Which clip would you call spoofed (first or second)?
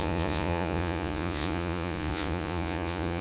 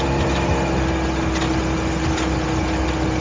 first